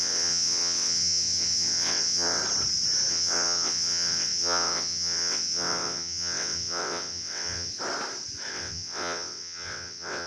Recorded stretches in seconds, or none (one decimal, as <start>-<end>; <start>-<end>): 2.4-3.1; 7.7-8.5